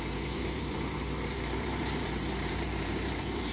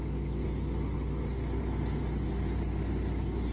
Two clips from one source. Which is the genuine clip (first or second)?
second